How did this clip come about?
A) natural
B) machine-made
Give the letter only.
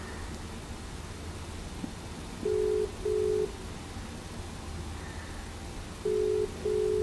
A